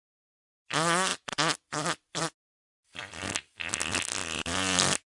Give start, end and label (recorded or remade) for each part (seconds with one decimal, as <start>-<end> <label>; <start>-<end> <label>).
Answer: 0.0-5.2 recorded